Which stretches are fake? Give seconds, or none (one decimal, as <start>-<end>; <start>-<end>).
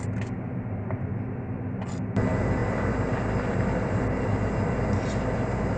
none